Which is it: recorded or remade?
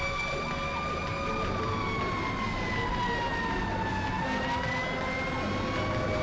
recorded